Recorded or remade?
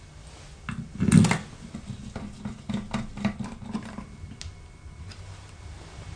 recorded